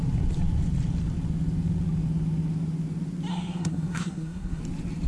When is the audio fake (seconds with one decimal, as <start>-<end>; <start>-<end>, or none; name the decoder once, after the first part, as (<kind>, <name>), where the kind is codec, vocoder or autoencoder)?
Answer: 3.3-4.6 (codec, SNAC)

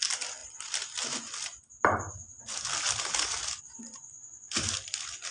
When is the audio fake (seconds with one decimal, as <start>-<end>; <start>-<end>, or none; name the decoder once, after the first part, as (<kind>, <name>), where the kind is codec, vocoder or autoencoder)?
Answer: none

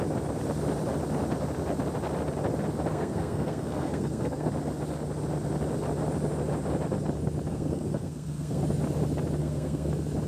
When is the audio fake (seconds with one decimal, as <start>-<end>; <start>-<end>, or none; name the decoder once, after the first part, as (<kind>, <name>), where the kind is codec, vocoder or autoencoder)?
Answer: 2.9-4.5 (codec, SNAC); 7.5-8.6; 9.4-9.9

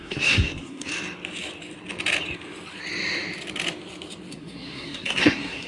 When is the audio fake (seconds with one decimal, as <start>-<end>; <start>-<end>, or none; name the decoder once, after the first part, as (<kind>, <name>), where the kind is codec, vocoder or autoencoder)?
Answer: 0.0-0.9 (codec, SNAC); 4.3-5.7

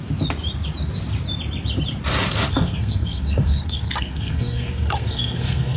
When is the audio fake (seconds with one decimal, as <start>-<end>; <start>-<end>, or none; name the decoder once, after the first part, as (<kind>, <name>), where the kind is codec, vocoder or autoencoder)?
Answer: 2.5-5.8 (codec, SNAC)

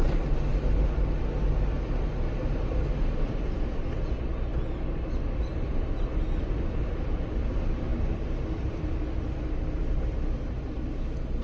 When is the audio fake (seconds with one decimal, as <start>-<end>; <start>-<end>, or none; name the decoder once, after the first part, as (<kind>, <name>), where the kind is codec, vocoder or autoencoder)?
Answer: none

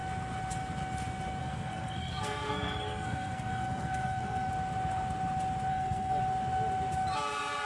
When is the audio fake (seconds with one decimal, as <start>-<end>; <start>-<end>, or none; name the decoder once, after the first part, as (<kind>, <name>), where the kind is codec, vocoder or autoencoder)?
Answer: 1.4-4.5 (codec, SNAC); 5.7-6.2

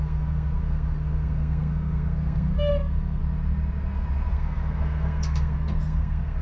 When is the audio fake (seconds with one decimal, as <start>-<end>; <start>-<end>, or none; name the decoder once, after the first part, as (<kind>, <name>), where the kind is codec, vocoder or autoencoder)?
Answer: 0.0-3.2 (codec, SNAC); 4.3-6.4